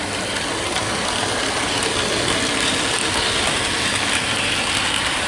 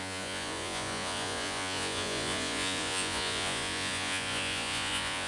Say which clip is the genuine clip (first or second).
first